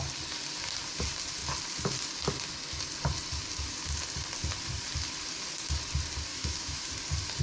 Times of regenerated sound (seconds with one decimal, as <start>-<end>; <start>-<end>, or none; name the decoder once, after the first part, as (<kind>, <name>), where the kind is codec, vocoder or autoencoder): 6.3-6.9 (autoencoder, DAC-VAE)